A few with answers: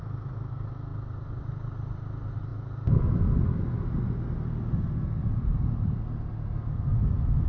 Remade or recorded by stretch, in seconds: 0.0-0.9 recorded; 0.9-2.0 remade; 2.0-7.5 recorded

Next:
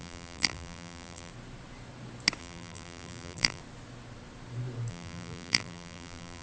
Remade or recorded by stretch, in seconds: 0.0-1.3 remade; 1.3-2.4 recorded; 2.4-3.6 remade; 3.6-4.9 recorded; 4.9-6.4 remade

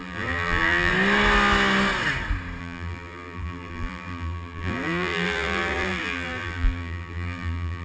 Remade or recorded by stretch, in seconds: 0.0-0.9 remade; 0.9-2.6 recorded; 2.6-7.8 remade

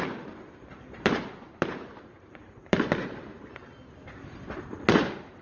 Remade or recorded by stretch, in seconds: 0.0-3.3 remade; 3.3-4.6 recorded; 4.6-5.4 remade

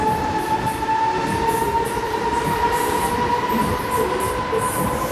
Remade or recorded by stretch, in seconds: 0.0-1.6 recorded; 1.6-2.7 remade; 2.7-5.1 recorded

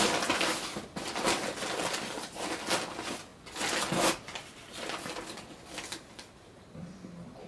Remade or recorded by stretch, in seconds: 0.0-7.5 recorded

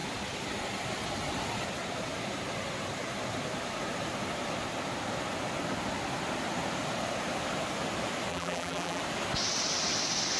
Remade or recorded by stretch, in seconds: 0.0-8.3 recorded; 8.3-9.0 remade; 9.0-10.4 recorded

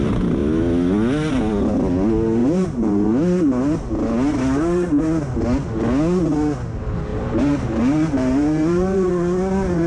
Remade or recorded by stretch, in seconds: 0.0-2.4 recorded; 2.4-3.1 remade; 3.1-7.1 recorded; 7.1-9.1 remade; 9.1-9.9 recorded